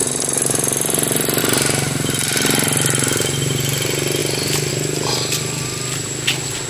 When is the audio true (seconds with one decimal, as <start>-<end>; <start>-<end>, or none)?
0.0-6.7